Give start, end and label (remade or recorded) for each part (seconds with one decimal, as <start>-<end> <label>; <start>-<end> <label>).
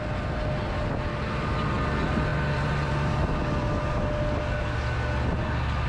0.0-5.9 recorded